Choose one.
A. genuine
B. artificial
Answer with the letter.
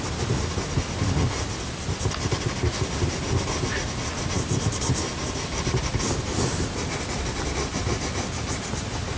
A